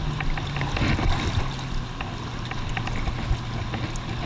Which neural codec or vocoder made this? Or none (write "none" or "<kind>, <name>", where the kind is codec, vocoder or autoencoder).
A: none